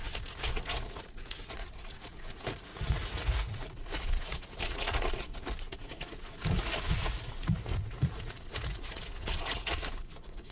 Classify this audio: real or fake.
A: fake